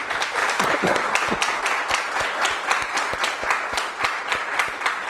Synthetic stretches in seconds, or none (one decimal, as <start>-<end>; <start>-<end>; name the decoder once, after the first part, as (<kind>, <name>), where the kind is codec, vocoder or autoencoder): 0.4-1.6 (vocoder, BigVGAN v2)